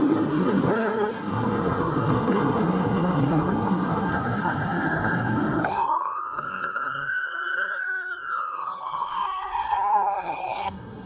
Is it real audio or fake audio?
fake